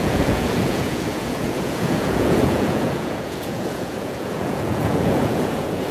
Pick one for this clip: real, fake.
fake